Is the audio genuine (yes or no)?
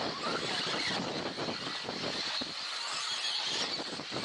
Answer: yes